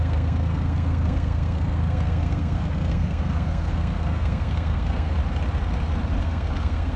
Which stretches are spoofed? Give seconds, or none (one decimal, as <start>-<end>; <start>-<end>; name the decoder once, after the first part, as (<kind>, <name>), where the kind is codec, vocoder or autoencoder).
0.0-5.2 (codec, SNAC); 6.2-7.0